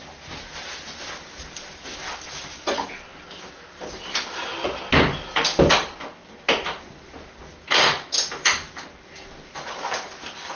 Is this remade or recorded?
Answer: recorded